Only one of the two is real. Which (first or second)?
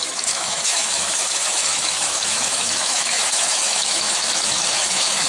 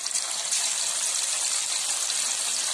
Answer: second